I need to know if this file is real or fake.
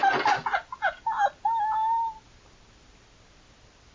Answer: real